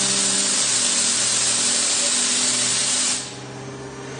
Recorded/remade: recorded